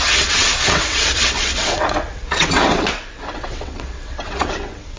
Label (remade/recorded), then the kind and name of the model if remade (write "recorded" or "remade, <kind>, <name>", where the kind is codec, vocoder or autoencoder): remade, vocoder, WaveNeXt